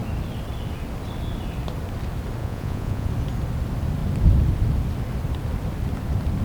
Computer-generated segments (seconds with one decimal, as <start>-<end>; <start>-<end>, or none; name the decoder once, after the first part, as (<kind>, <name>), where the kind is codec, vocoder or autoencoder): 2.4-3.1 (vocoder, Vocos)